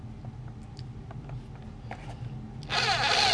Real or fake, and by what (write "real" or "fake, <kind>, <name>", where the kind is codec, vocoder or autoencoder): real